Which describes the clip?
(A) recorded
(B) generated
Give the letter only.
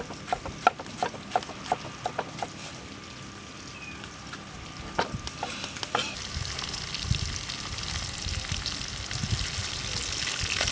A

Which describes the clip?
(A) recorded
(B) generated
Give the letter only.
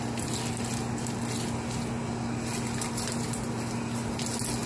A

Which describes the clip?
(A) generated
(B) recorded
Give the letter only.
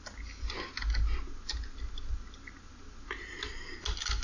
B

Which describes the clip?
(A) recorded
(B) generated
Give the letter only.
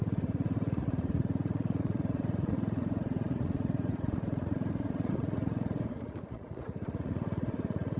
B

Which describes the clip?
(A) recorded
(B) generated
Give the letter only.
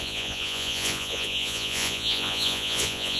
B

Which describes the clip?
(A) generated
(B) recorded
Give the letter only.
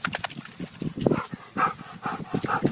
B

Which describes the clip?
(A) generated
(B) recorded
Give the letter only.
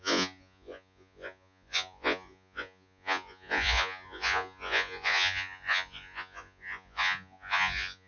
A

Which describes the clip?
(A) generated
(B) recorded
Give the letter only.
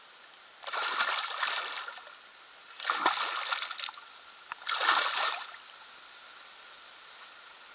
B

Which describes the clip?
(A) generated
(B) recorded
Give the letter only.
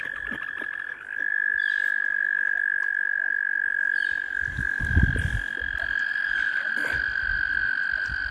B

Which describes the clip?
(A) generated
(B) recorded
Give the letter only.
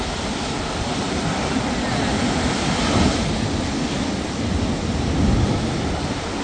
B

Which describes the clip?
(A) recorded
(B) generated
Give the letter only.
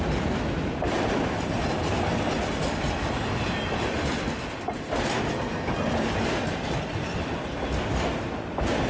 A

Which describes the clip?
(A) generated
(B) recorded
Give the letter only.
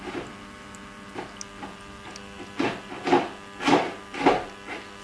B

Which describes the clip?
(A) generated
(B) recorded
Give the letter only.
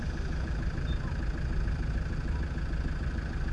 B